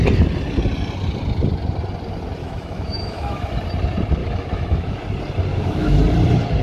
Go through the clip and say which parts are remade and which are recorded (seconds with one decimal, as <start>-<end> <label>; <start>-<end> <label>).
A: 0.0-2.4 recorded; 2.4-3.5 remade; 3.5-4.2 recorded; 4.2-5.0 remade; 5.0-5.5 recorded; 5.5-6.0 remade; 6.0-6.6 recorded